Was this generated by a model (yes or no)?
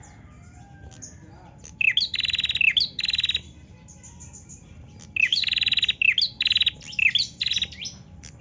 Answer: no